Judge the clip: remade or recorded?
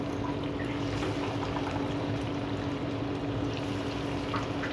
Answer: recorded